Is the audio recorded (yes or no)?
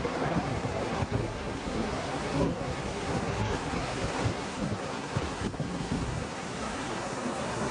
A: no